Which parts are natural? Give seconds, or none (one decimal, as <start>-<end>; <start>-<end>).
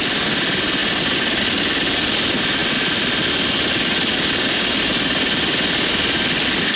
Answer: 0.0-6.8